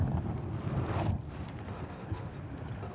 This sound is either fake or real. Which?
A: real